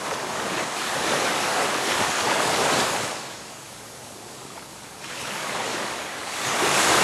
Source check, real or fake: fake